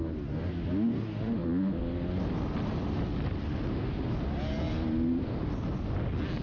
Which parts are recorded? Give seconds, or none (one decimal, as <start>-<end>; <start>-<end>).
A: 0.0-6.4